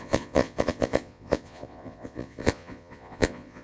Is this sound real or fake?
fake